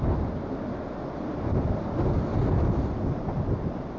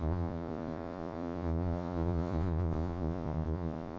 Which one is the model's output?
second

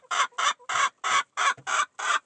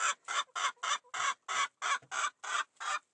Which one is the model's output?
first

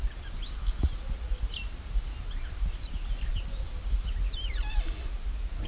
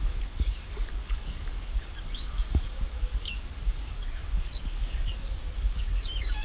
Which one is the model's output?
second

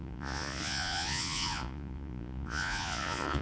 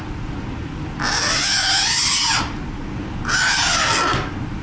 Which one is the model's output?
first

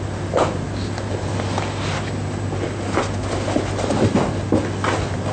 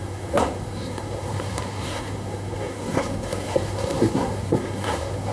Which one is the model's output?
second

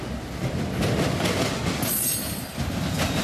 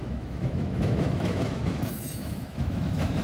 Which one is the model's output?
second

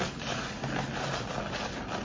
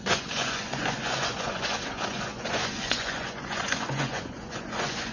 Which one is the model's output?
second